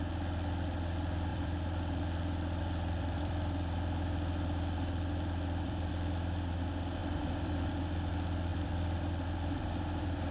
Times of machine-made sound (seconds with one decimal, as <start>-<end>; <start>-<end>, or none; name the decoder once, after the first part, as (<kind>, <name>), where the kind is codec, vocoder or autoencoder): 1.3-5.9 (vocoder, BigVGAN v2); 7.0-7.7; 8.5-10.3

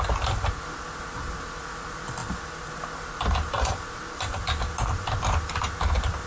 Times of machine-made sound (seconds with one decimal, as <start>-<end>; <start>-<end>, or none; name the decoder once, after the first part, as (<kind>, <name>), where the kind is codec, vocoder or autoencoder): none